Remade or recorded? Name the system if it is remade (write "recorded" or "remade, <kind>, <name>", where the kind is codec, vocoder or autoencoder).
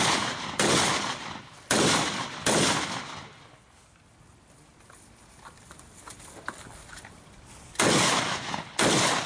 recorded